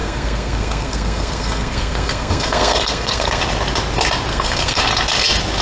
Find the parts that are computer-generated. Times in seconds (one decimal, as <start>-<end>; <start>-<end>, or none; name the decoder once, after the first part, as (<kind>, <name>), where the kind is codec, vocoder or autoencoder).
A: 0.0-3.4 (codec, SNAC); 4.3-4.8